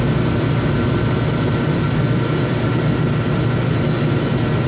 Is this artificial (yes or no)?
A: no